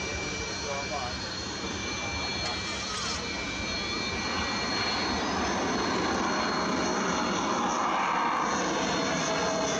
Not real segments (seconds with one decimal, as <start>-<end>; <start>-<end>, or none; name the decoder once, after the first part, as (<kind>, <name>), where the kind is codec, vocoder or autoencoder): none